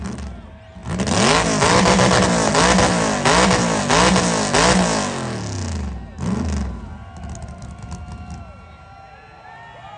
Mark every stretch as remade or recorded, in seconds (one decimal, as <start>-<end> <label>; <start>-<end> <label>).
0.0-10.0 recorded